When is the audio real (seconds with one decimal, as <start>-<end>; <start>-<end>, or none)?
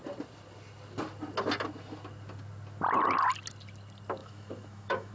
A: 0.0-4.2